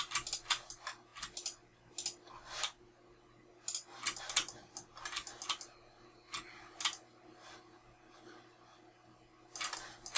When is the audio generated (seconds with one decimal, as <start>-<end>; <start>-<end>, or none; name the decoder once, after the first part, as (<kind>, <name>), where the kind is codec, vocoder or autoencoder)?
none